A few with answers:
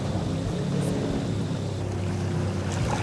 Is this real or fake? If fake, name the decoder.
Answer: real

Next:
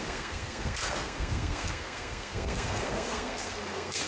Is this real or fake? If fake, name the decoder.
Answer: fake, codec, SNAC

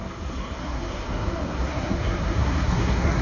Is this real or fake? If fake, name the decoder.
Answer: fake, codec, SNAC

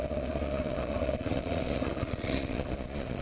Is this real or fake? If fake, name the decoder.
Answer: fake, vocoder, Vocos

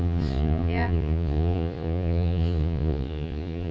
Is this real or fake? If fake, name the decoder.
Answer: fake, vocoder, Vocos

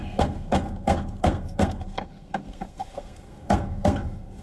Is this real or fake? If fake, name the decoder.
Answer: fake, codec, SNAC